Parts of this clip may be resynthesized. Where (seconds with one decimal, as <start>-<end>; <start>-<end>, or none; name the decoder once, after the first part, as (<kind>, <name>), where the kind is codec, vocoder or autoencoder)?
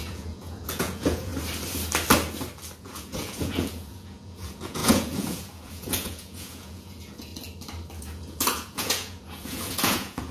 0.0-1.3 (vocoder, Vocos); 2.8-7.3; 8.0-10.3